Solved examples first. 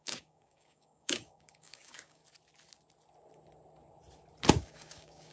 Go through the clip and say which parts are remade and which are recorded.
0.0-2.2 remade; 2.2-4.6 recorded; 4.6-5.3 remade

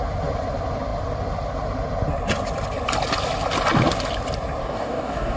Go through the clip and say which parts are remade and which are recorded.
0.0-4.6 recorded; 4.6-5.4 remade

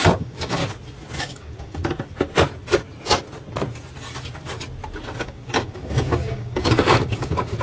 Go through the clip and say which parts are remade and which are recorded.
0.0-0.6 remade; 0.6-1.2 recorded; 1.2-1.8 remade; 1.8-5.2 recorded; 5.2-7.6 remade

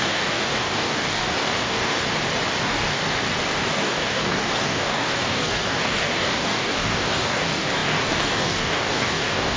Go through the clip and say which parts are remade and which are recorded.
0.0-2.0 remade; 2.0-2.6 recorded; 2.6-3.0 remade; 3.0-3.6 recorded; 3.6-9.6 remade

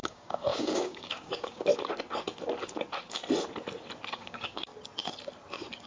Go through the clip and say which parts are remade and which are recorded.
0.0-1.7 remade; 1.7-4.1 recorded; 4.1-4.7 remade; 4.7-5.9 recorded

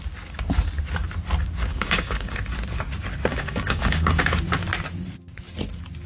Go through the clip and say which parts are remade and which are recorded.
0.0-1.7 recorded; 1.7-2.3 remade; 2.3-3.3 recorded; 3.3-4.4 remade; 4.4-6.1 recorded

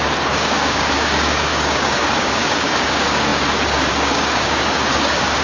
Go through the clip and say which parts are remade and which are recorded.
0.0-5.4 remade

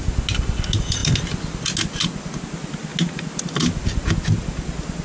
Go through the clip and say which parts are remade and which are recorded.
0.0-5.0 recorded